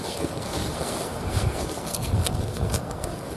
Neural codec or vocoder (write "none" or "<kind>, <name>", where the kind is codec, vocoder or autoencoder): codec, SNAC